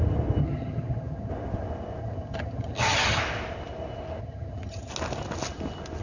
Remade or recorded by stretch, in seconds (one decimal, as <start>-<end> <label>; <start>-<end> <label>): 0.0-0.4 recorded; 0.4-1.3 remade; 1.3-2.0 recorded; 2.0-3.2 remade; 3.2-4.2 recorded; 4.2-4.9 remade; 4.9-6.0 recorded